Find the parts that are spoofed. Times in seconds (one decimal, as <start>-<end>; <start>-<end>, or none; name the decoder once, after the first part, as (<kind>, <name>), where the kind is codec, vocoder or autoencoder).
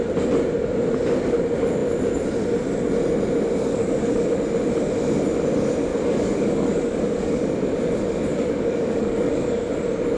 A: 3.6-4.3 (codec, DAC); 5.9-7.4; 8.3-9.7